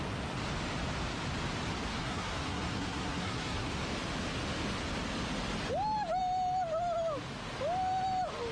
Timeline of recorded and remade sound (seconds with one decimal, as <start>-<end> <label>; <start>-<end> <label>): 0.0-1.9 recorded; 1.9-3.7 remade; 3.7-8.5 recorded